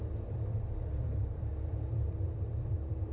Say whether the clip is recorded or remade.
remade